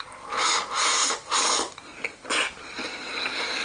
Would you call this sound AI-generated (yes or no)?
no